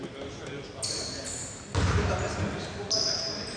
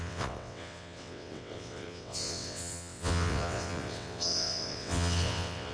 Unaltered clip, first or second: first